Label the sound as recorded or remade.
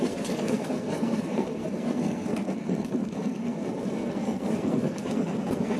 remade